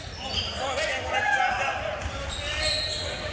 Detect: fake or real real